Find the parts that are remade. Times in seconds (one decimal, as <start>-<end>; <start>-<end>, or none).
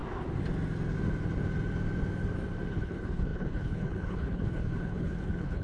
2.7-5.6